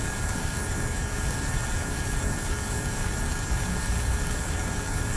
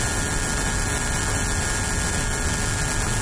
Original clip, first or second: second